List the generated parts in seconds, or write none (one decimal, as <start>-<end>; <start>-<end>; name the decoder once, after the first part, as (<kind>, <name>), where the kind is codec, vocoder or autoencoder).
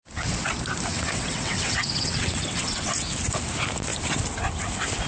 0.9-2.9 (vocoder, WaveNeXt)